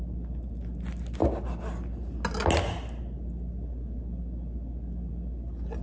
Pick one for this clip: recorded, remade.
recorded